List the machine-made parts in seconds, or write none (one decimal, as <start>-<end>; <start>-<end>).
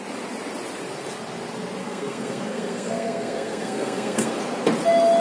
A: 1.8-4.3